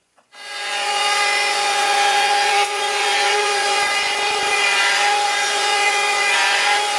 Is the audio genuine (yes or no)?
no